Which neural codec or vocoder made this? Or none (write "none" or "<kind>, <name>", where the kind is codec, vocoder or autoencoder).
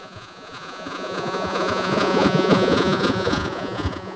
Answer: vocoder, Vocos